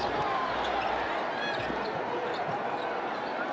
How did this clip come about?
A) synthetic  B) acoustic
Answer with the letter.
B